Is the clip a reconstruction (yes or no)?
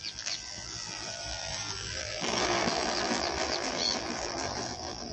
yes